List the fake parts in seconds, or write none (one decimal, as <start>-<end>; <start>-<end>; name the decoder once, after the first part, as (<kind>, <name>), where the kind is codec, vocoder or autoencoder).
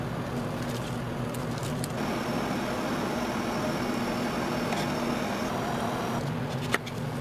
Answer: 1.6-3.2 (vocoder, BigVGAN v2)